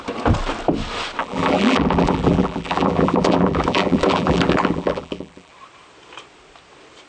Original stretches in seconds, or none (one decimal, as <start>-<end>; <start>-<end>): 0.0-1.2; 5.5-7.1